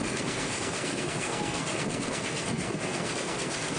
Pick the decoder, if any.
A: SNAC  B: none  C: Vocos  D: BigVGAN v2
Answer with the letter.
A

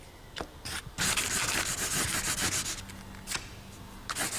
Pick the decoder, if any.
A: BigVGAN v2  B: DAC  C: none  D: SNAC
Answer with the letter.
C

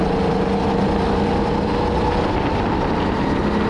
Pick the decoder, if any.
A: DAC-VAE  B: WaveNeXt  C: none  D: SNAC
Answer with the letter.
C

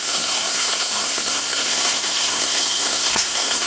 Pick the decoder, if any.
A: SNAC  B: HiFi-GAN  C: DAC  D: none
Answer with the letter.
A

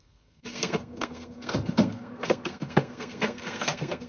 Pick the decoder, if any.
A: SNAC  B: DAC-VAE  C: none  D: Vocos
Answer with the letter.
A